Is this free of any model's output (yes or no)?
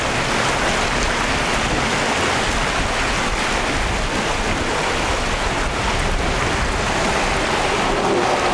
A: yes